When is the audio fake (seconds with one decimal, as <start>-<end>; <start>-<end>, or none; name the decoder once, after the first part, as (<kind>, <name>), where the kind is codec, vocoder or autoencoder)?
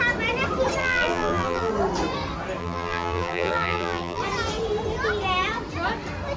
0.8-1.7 (vocoder, BigVGAN v2); 2.6-4.2